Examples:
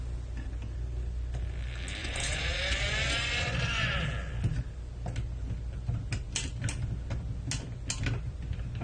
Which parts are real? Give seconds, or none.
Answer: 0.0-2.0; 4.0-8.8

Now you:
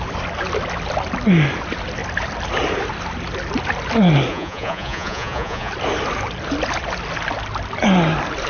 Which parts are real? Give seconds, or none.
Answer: 0.0-4.3; 5.7-8.5

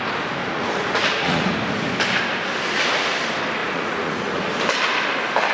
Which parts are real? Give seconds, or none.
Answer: 0.0-0.4; 1.5-3.6; 4.5-5.5

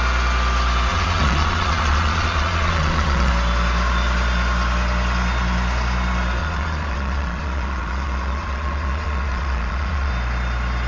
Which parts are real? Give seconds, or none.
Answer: 0.0-0.9; 3.3-6.4; 10.1-10.9

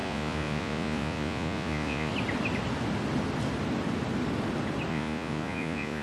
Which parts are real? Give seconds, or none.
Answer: 2.1-4.9